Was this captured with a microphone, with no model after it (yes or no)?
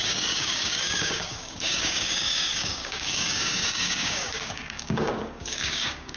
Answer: no